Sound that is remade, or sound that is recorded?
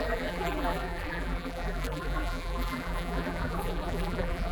remade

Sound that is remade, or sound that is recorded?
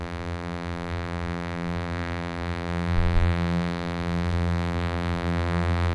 remade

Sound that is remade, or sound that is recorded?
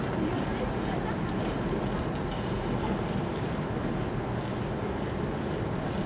recorded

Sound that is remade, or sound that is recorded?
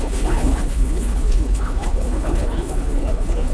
remade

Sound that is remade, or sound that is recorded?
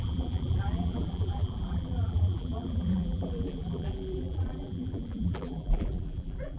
remade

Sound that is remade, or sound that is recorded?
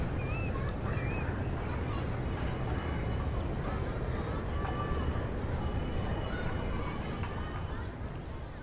recorded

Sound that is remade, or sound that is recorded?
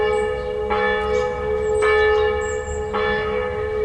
recorded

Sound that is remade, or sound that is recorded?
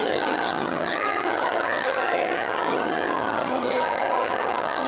remade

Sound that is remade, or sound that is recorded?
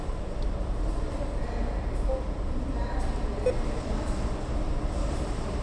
recorded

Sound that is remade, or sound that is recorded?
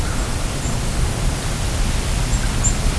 recorded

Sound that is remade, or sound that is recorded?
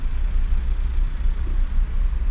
recorded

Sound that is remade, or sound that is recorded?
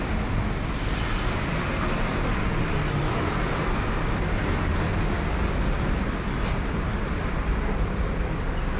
recorded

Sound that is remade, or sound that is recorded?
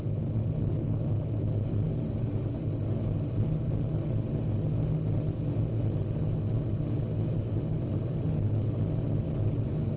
recorded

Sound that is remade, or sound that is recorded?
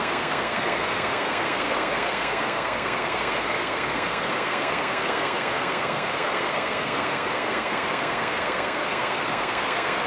remade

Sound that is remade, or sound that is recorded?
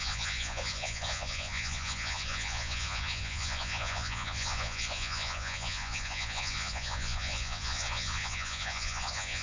remade